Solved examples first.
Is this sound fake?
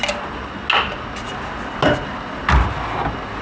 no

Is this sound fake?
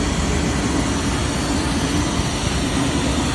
no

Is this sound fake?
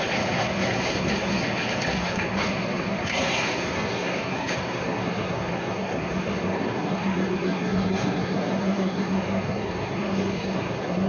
yes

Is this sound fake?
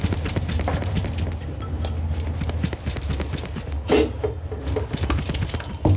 no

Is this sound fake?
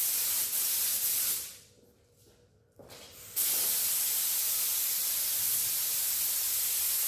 no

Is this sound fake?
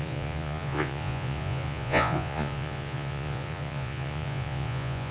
yes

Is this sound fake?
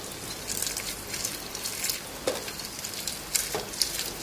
no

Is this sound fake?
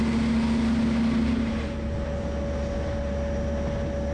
no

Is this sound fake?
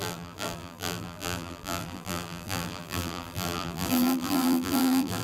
yes